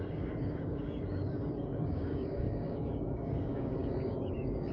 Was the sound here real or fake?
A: fake